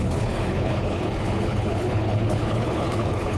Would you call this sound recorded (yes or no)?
no